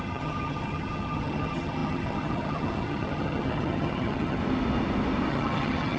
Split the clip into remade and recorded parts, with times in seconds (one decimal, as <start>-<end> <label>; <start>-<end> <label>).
0.0-4.4 remade; 4.4-5.3 recorded; 5.3-6.0 remade